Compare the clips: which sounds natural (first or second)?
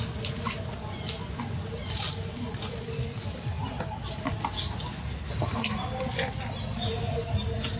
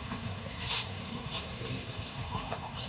first